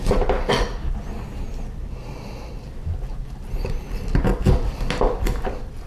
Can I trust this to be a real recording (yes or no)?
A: yes